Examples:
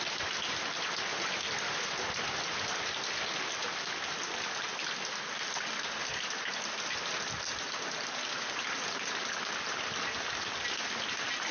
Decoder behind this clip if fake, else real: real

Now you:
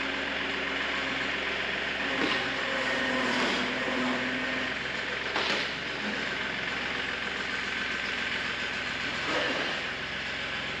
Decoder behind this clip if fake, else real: real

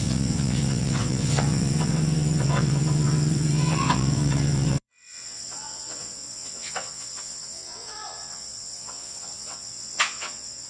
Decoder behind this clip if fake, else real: fake, vocoder, WaveNeXt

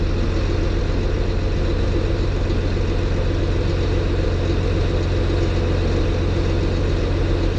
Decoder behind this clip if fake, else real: real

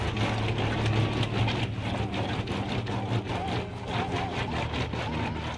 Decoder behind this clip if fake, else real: real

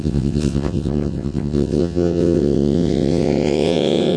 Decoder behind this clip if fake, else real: fake, vocoder, WaveNeXt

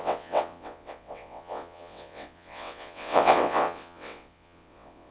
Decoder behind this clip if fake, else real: fake, vocoder, WaveNeXt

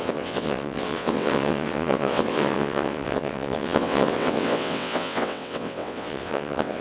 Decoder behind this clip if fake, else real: fake, vocoder, WaveNeXt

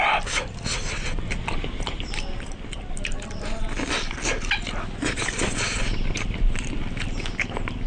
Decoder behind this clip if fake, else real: real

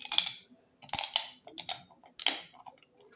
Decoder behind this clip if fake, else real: real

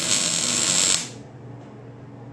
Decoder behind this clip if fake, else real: real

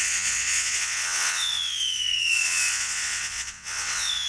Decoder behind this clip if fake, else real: fake, vocoder, WaveNeXt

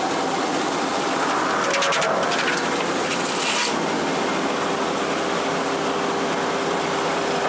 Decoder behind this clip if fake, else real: real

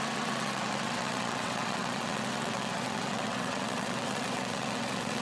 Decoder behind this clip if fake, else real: fake, vocoder, WaveNeXt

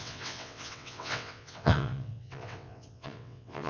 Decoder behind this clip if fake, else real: fake, vocoder, WaveNeXt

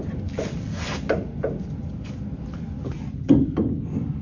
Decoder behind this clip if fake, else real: real